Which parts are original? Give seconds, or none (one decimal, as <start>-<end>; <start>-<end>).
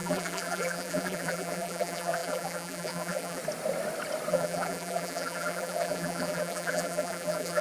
3.4-4.3